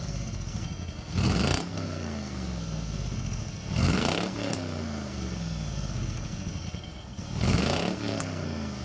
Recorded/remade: remade